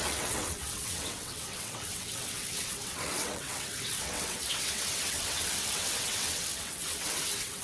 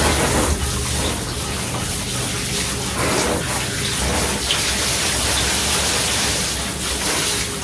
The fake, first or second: first